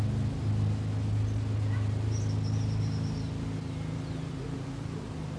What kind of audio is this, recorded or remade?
recorded